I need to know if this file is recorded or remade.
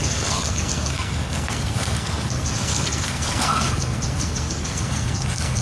remade